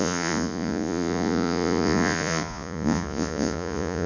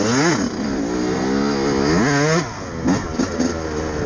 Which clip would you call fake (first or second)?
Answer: first